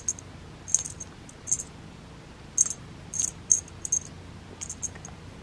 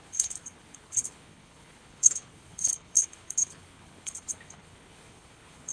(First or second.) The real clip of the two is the first